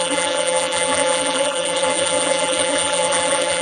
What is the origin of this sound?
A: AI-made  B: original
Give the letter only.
A